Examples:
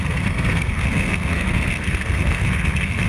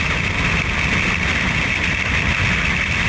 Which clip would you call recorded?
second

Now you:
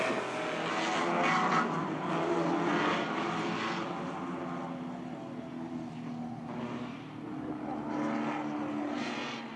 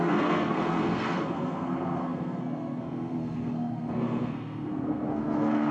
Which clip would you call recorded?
first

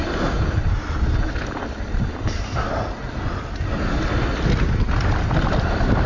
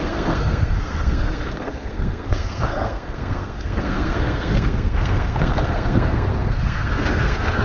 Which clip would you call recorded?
first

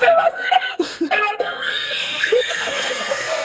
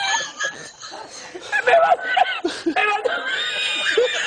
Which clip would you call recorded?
second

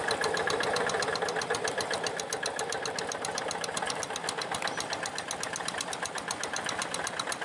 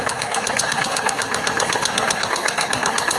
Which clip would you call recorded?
first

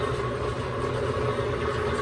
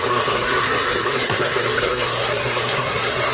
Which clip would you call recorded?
first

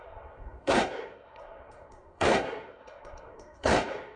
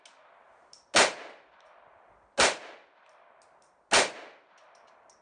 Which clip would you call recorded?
second